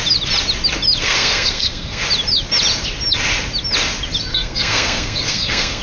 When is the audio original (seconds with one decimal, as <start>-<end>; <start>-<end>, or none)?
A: 0.0-1.0; 2.0-4.3